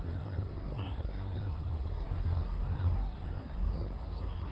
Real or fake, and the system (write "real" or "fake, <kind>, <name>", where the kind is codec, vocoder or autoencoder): fake, codec, SNAC